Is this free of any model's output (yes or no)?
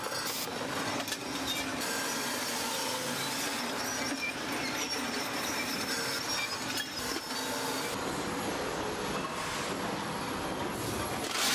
yes